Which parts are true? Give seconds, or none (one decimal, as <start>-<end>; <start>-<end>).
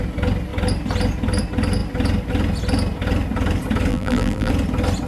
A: 0.0-3.9; 4.5-5.1